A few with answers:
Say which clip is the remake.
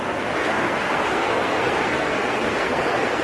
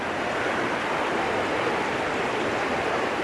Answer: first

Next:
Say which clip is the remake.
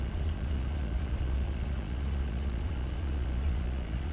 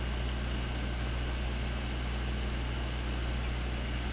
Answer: first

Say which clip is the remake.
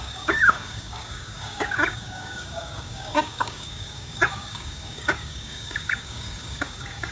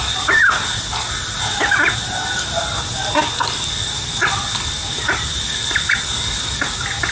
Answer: first